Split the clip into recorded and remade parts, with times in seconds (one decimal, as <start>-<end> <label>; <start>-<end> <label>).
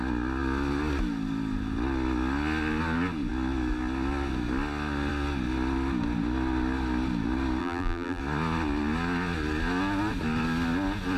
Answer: 0.0-7.6 recorded; 7.6-8.2 remade; 8.2-11.2 recorded